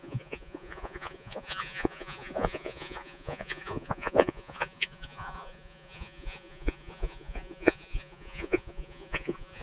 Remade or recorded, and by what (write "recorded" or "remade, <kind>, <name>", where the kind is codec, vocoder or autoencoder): remade, vocoder, Vocos